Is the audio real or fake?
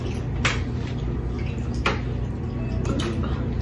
real